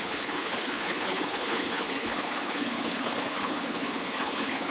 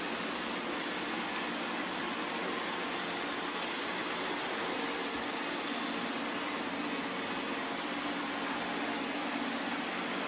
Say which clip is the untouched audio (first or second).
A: second